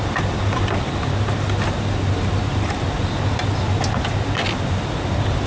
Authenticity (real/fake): real